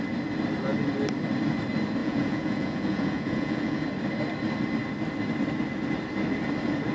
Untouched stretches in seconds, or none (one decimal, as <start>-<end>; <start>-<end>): 0.0-2.0; 3.8-6.9